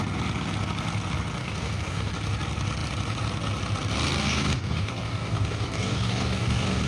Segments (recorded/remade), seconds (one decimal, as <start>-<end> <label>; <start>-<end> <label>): 0.0-1.4 recorded; 1.4-2.1 remade; 2.1-4.2 recorded; 4.2-6.9 remade